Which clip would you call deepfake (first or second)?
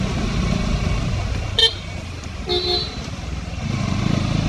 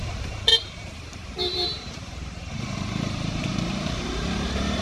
second